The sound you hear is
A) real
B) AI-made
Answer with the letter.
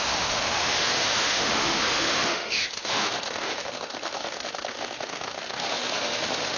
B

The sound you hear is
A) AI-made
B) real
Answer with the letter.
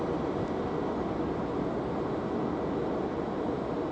B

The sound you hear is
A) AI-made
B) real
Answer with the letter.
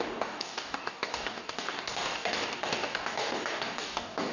A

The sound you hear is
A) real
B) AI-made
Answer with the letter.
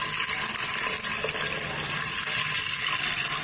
A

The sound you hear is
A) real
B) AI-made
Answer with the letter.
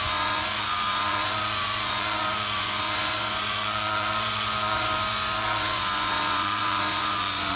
B